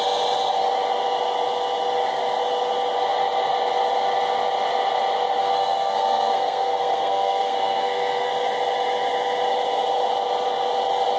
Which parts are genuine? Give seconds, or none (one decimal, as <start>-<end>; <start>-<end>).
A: 0.0-5.4; 8.3-11.2